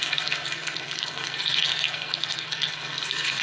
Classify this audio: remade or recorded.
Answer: remade